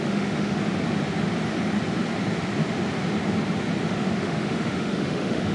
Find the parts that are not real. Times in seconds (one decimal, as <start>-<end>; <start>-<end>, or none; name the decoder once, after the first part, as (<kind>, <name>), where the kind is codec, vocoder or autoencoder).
0.0-0.6 (autoencoder, DAC-VAE); 3.9-5.5